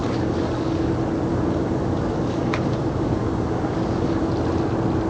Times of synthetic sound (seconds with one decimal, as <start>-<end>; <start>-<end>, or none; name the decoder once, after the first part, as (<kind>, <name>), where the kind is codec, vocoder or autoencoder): 0.0-0.9 (codec, DAC); 1.3-4.3